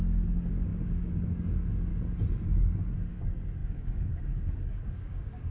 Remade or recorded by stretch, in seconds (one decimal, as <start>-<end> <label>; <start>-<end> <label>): 0.0-1.9 remade; 1.9-3.1 recorded; 3.1-5.5 remade